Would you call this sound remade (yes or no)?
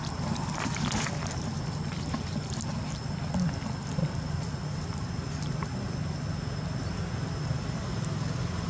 no